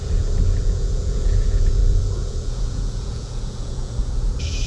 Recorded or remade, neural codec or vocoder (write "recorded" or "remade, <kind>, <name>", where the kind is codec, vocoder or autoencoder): remade, vocoder, Vocos